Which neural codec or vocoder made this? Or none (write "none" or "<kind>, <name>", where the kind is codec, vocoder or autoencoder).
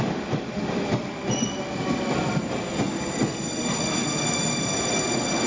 none